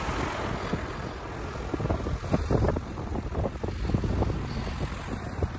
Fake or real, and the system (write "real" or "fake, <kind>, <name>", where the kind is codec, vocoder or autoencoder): real